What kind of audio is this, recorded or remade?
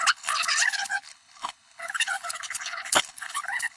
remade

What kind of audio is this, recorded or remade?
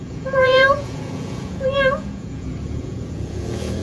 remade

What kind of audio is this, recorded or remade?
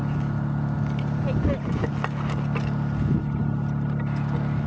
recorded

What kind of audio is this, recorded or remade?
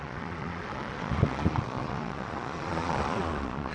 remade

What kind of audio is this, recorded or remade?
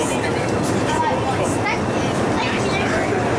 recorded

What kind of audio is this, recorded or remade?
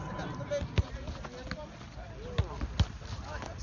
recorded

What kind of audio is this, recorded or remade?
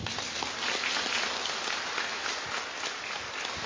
recorded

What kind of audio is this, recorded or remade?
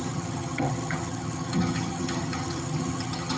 remade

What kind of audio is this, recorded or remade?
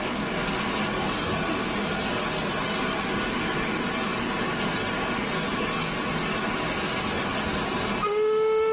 recorded